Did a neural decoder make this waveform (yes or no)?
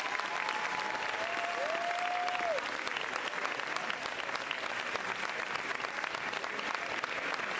no